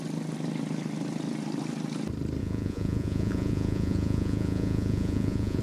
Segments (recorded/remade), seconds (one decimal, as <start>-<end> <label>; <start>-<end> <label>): 0.0-2.4 recorded; 2.4-5.6 remade